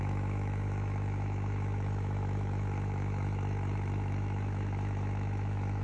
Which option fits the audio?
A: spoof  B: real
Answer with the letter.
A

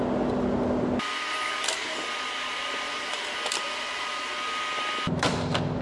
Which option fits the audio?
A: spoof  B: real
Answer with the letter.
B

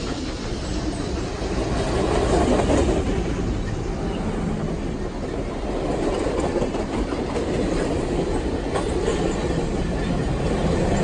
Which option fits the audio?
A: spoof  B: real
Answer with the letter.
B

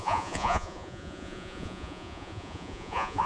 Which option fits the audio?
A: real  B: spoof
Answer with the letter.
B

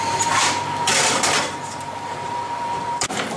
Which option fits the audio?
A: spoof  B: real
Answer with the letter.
A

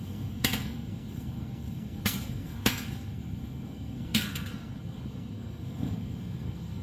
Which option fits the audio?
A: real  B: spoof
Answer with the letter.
B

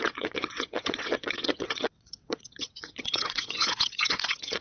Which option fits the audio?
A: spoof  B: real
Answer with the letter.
A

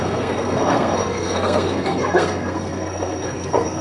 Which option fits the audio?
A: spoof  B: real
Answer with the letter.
A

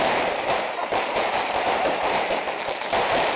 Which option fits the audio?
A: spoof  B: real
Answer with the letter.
A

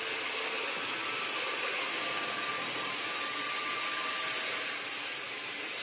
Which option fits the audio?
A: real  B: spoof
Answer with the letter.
A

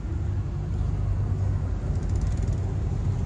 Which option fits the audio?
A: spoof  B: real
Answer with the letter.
B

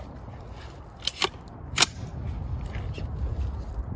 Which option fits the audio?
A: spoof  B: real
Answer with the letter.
B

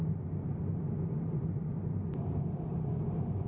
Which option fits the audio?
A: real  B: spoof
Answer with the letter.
A